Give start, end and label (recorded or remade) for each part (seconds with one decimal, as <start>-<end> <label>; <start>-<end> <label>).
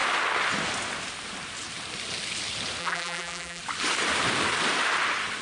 0.0-2.8 recorded; 2.8-3.6 remade; 3.6-5.4 recorded